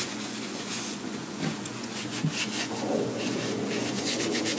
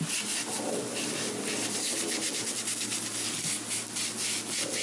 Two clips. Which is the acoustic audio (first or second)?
second